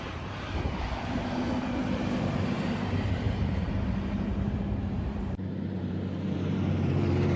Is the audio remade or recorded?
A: remade